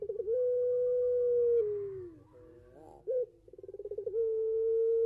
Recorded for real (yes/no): yes